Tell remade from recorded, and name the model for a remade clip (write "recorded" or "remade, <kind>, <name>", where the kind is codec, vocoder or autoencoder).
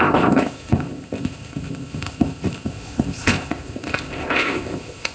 remade, codec, ZipCodec